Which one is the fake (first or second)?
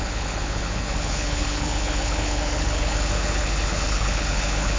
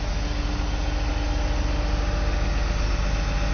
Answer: first